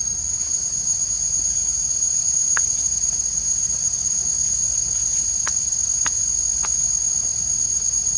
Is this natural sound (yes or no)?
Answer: yes